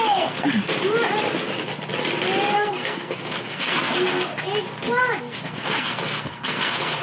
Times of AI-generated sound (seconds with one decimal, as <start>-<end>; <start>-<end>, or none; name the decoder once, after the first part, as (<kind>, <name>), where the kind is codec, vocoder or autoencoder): 0.0-0.7 (codec, SNAC); 2.5-4.3; 5.2-7.0